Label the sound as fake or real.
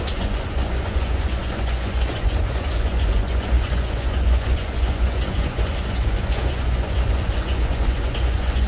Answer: fake